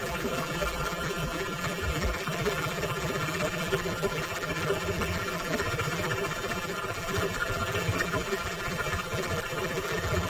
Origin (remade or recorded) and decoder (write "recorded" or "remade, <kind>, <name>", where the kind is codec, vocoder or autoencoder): remade, vocoder, BigVGAN v2